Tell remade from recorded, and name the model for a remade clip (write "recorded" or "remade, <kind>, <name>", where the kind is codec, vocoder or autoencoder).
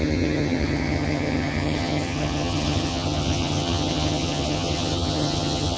remade, vocoder, HiFi-GAN